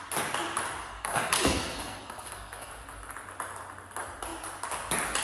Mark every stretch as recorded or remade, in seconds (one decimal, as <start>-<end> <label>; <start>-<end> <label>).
0.0-0.8 recorded; 0.8-2.7 remade; 2.7-5.2 recorded